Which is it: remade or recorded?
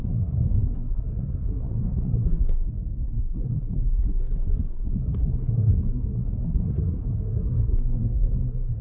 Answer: remade